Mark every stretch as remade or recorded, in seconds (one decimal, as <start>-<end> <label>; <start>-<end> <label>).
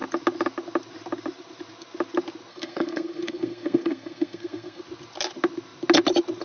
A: 0.0-2.5 recorded; 2.5-4.8 remade; 4.8-6.4 recorded